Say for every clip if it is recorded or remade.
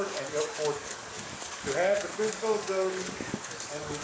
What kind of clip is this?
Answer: remade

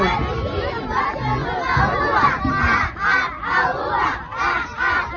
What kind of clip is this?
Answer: recorded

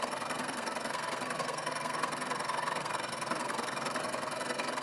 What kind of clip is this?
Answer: remade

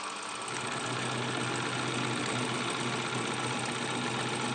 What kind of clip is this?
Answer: recorded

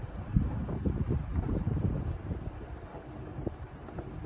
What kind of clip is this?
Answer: recorded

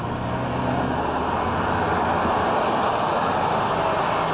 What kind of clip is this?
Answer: recorded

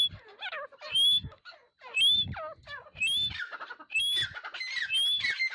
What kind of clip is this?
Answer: recorded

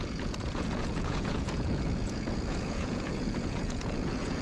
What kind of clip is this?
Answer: remade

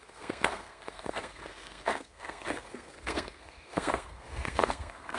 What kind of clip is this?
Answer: remade